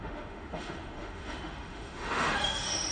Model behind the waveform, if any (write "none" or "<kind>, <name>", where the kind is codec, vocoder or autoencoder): autoencoder, DAC-VAE